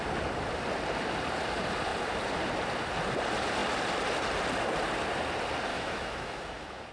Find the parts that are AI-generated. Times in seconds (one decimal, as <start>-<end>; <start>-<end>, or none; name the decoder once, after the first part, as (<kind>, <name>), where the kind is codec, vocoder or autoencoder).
5.7-6.9 (autoencoder, DAC-VAE)